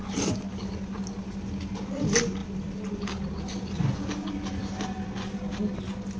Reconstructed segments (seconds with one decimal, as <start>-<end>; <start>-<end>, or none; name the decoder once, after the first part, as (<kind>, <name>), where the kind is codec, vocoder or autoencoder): none